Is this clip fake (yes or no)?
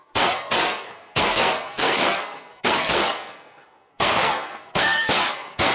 yes